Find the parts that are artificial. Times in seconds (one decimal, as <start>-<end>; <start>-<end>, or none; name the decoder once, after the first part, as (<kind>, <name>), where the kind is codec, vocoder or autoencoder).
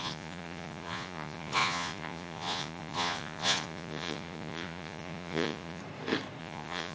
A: 0.0-5.8 (vocoder, Vocos); 6.4-6.9